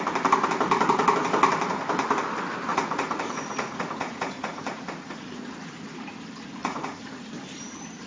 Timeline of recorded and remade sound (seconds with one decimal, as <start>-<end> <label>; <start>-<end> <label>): 0.0-2.7 recorded; 2.7-6.0 remade; 6.0-6.6 recorded; 6.6-7.3 remade; 7.3-8.1 recorded